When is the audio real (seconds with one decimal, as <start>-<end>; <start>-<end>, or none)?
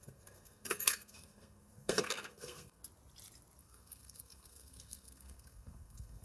2.8-3.6